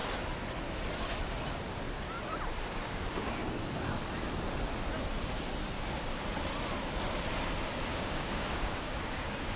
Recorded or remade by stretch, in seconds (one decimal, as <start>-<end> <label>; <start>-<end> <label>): 0.0-2.7 recorded; 2.7-3.4 remade; 3.4-7.9 recorded; 7.9-9.6 remade